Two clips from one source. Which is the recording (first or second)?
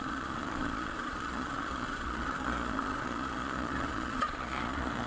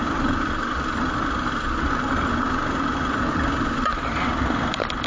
second